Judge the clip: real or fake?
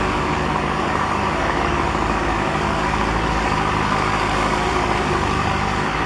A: fake